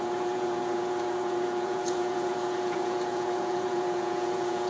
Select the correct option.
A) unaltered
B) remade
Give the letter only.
B